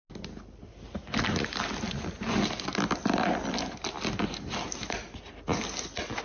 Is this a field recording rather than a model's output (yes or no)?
yes